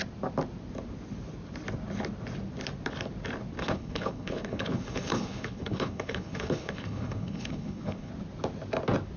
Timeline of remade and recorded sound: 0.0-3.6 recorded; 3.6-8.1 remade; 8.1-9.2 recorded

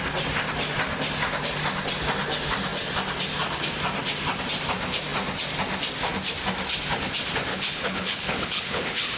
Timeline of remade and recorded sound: 0.0-7.5 recorded; 7.5-9.2 remade

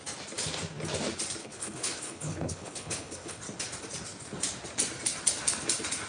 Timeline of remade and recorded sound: 0.0-1.4 recorded; 1.4-3.4 remade; 3.4-6.1 recorded

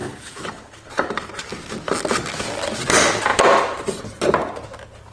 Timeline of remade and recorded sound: 0.0-0.9 remade; 0.9-5.1 recorded

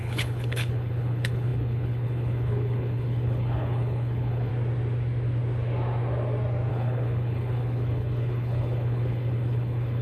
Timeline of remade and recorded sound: 0.0-4.5 remade; 4.5-6.7 recorded; 6.7-10.0 remade